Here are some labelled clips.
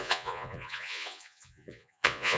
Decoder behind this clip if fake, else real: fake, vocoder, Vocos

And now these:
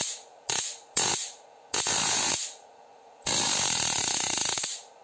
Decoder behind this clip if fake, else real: fake, vocoder, Vocos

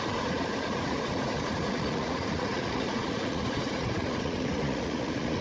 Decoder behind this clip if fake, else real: fake, vocoder, Vocos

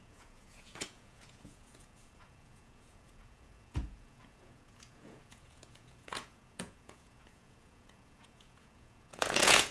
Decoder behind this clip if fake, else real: fake, vocoder, Vocos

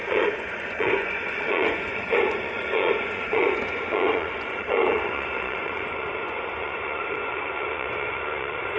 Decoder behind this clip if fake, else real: fake, vocoder, Vocos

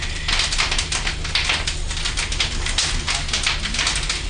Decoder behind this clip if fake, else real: real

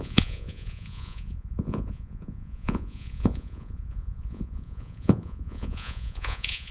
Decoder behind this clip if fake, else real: fake, vocoder, Vocos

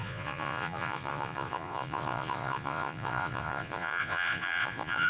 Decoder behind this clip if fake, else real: fake, vocoder, Vocos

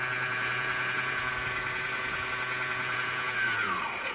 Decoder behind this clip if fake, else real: fake, vocoder, Vocos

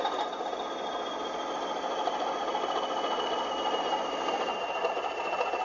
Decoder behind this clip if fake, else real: real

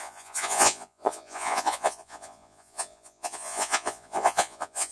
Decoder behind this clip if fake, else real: fake, vocoder, Vocos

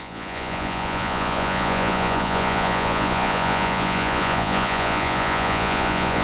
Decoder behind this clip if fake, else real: fake, vocoder, Vocos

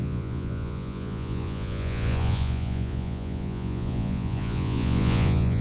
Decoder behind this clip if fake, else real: fake, vocoder, Vocos